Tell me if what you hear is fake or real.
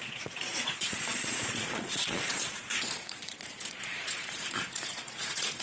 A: fake